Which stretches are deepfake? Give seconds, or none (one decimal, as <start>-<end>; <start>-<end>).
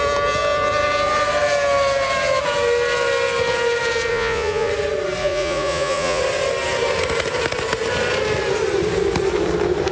4.1-4.7; 5.2-6.2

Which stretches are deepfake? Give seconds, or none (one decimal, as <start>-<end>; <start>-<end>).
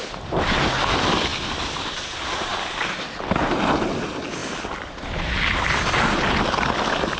none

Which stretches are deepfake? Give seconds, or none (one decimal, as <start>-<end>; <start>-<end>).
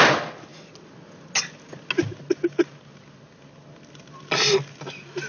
none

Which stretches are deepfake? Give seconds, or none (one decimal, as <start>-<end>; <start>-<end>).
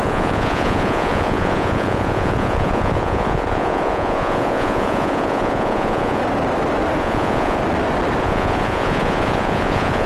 0.0-6.2; 7.0-7.6; 8.2-10.1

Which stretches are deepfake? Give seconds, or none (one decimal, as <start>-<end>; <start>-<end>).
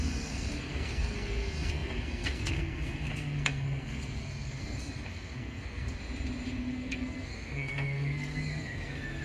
0.0-6.0; 6.6-9.2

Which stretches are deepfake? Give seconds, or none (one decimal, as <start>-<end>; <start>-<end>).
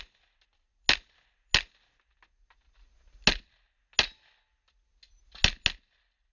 none